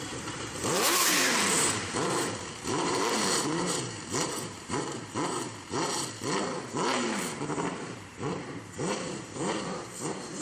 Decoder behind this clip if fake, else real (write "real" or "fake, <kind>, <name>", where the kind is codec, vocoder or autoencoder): fake, vocoder, BigVGAN v2